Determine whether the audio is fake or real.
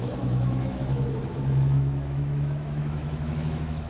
fake